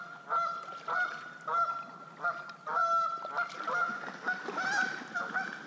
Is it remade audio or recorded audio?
recorded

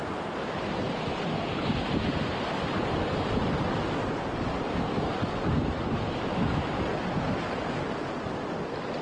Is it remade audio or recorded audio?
recorded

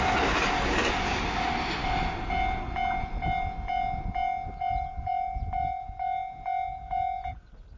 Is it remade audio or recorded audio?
recorded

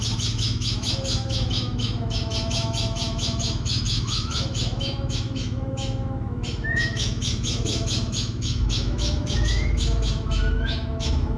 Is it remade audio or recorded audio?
remade